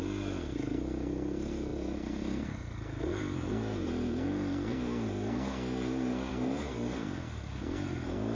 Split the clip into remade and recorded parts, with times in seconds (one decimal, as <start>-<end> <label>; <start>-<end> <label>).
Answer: 0.0-8.3 remade